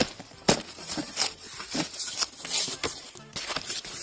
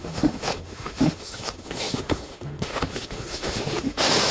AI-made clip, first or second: second